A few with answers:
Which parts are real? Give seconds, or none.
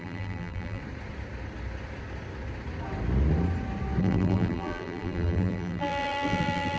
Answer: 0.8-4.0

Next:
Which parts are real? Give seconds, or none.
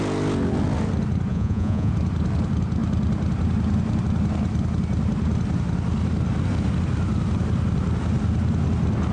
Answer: 0.0-1.3; 1.9-9.1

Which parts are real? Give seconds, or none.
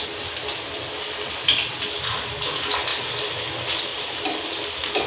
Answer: 0.0-2.9; 3.5-3.9; 4.4-5.1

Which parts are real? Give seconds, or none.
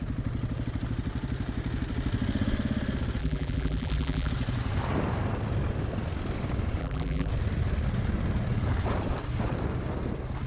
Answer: 0.0-3.2; 4.3-6.8; 7.3-10.5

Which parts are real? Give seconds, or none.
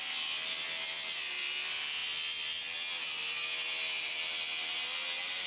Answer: 0.0-5.5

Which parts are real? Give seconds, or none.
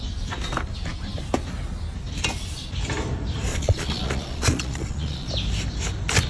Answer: 0.0-3.5; 5.3-6.3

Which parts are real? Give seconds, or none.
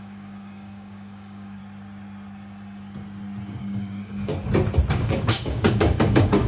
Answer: 1.6-3.6; 4.3-4.9